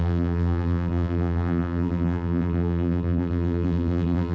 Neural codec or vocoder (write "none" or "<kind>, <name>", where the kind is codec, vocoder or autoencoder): vocoder, BigVGAN v2